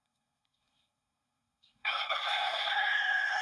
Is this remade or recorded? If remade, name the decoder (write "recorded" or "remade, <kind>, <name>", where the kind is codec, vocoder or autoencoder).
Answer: remade, codec, SNAC